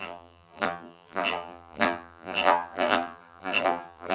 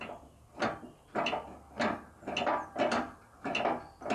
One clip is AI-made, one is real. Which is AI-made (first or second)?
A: first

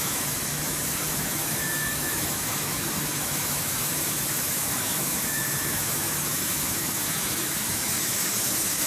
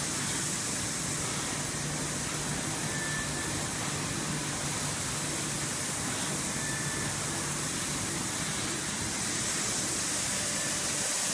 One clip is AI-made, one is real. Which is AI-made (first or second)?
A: first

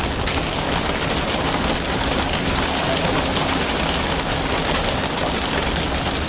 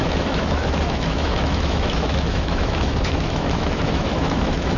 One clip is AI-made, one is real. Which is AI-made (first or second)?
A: second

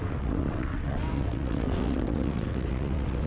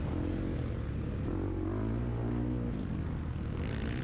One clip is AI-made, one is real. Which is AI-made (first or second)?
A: first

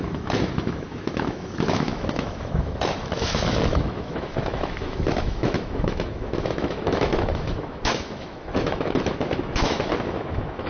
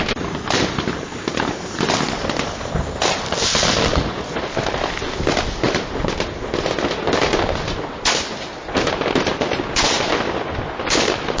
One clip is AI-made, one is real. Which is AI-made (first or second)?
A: first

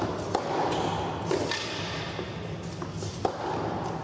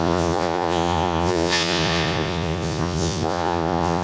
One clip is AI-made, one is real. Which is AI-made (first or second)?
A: second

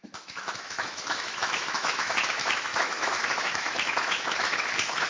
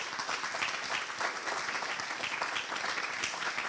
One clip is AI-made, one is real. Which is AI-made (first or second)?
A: first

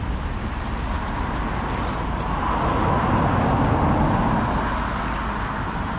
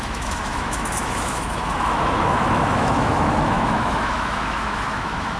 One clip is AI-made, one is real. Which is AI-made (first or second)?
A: second